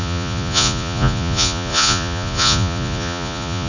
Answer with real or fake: fake